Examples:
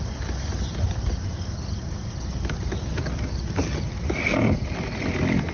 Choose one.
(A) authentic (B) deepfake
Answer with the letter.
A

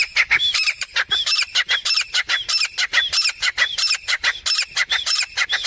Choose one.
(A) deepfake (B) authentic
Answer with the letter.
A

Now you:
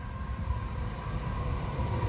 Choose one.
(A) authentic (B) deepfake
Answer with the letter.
B